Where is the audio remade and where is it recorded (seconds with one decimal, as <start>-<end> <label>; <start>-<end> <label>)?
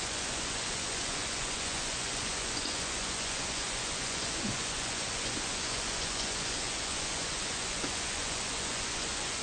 0.0-9.4 remade